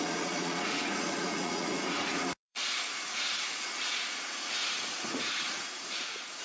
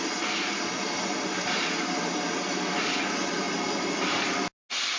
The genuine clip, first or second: second